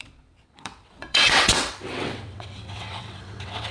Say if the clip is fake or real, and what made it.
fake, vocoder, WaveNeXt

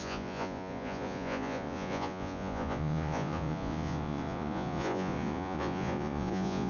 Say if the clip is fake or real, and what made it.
fake, vocoder, Vocos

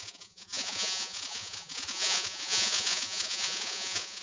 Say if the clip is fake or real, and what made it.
fake, vocoder, Vocos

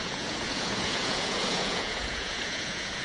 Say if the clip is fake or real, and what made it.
fake, vocoder, Vocos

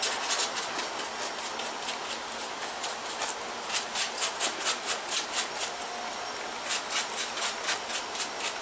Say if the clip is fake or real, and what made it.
real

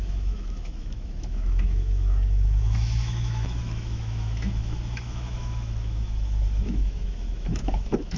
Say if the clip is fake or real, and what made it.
fake, autoencoder, DAC-VAE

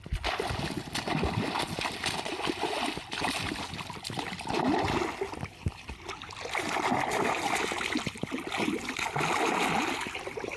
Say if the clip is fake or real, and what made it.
real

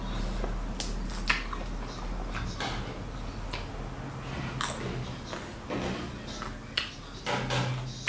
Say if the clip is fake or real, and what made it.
real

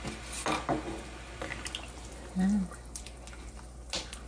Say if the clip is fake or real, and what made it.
real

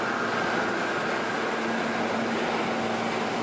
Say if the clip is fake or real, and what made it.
real